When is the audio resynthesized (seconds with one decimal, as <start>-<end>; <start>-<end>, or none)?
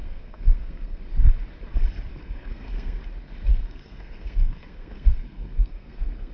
0.0-1.0; 2.1-3.0; 3.5-6.3